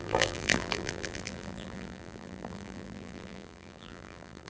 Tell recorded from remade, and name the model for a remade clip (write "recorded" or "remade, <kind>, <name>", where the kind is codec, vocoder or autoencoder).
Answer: remade, vocoder, BigVGAN v2